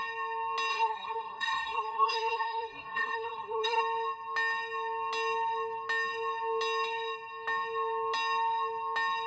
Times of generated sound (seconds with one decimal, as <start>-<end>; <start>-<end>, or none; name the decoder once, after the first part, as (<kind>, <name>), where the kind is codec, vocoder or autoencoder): 0.7-3.8 (codec, SNAC)